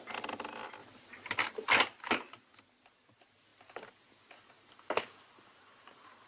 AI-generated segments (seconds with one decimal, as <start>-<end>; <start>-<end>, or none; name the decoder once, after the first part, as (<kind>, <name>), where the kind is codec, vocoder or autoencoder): none